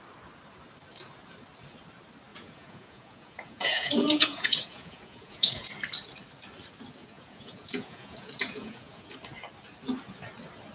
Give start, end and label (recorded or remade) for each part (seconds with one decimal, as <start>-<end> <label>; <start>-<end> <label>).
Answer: 0.0-2.3 recorded; 2.3-5.7 remade; 5.7-7.0 recorded; 7.0-9.1 remade; 9.1-10.7 recorded